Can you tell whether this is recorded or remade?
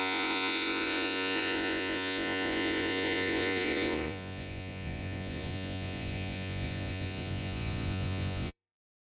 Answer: remade